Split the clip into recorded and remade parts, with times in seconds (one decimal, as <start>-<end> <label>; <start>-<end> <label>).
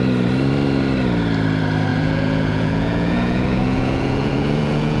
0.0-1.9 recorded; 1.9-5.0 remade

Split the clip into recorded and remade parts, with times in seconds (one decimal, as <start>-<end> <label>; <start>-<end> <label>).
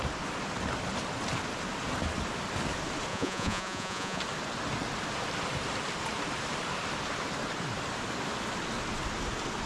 0.0-3.1 recorded; 3.1-4.2 remade; 4.2-9.7 recorded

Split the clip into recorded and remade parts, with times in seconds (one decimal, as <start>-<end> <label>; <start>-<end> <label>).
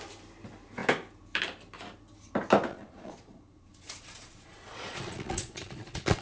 0.0-2.7 recorded; 2.7-6.2 remade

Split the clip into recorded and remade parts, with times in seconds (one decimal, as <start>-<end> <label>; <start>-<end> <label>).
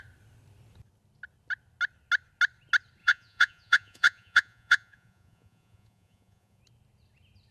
0.0-3.0 recorded; 3.0-6.6 remade; 6.6-7.5 recorded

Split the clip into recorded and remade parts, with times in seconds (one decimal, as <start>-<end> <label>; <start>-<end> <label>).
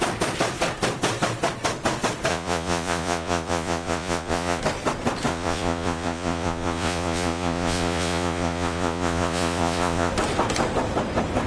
0.0-2.3 recorded; 2.3-4.6 remade; 4.6-5.3 recorded; 5.3-10.1 remade; 10.1-11.5 recorded